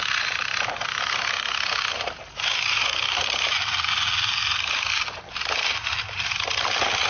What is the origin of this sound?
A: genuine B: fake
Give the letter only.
A